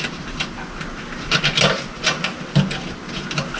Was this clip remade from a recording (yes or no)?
no